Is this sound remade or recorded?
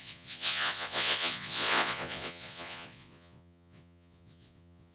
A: remade